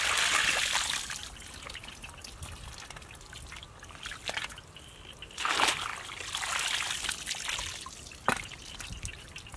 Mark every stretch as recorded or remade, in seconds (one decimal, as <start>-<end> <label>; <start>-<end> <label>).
0.0-9.6 recorded